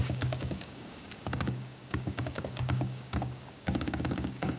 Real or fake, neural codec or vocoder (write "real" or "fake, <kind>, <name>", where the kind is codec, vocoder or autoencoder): fake, codec, DAC